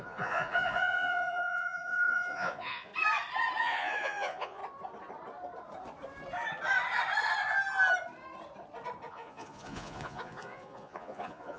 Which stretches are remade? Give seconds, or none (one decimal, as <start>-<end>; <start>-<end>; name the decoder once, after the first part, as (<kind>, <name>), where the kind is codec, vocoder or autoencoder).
0.0-2.9 (vocoder, Vocos); 3.6-4.6; 9.1-11.6